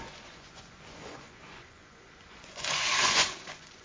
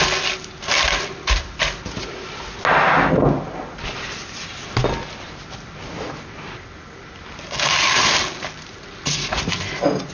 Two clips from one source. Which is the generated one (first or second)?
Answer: first